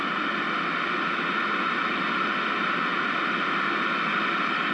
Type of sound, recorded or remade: recorded